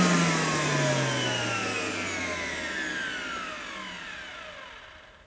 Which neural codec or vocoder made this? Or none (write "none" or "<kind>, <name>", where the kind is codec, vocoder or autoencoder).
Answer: none